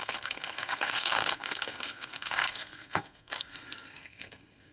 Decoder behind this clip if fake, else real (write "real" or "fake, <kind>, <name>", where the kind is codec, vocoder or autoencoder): fake, codec, SNAC